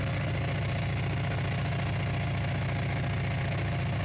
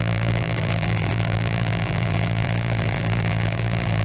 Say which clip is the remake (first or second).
second